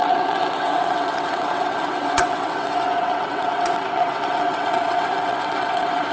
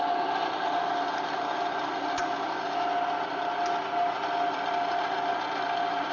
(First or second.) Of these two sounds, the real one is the second